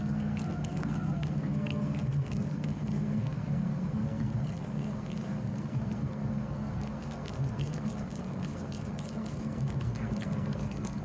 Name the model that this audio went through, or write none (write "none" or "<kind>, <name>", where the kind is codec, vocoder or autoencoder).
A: codec, SNAC